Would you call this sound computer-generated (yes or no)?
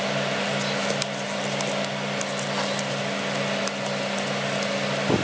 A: no